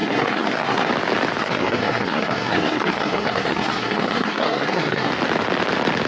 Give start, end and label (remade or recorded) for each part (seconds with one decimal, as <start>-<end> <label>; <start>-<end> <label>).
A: 0.0-0.9 remade; 0.9-1.4 recorded; 1.4-5.1 remade; 5.1-6.1 recorded